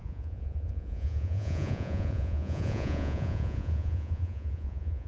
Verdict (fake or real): fake